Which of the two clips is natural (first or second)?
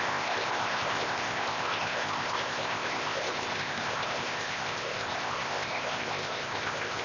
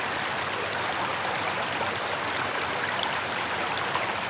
second